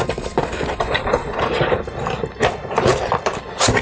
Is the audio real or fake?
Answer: real